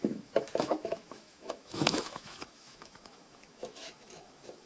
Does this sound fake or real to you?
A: fake